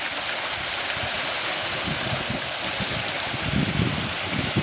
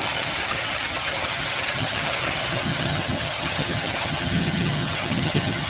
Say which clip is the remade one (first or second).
second